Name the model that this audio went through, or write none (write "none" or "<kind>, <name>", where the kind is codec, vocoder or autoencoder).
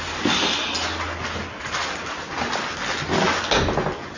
none